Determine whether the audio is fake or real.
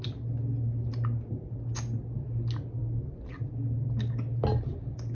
real